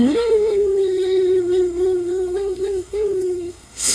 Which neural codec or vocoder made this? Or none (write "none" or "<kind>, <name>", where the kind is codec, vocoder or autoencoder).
codec, SNAC